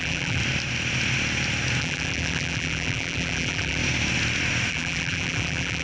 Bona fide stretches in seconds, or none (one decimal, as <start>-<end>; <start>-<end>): 0.4-1.8; 3.8-4.7